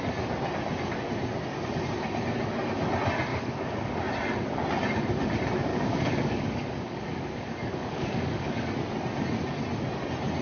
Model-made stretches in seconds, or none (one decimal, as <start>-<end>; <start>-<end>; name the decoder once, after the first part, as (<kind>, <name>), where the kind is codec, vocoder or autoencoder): 3.3-4.0 (codec, DAC); 5.7-8.7